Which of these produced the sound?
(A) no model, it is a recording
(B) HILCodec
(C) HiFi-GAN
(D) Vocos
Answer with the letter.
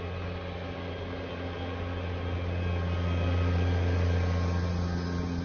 A